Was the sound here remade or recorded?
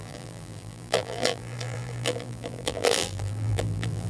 remade